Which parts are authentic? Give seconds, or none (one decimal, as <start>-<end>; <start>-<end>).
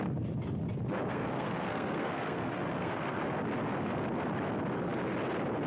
0.0-1.1; 3.2-5.7